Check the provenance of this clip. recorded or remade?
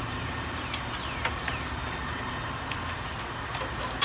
recorded